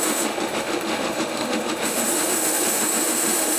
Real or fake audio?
fake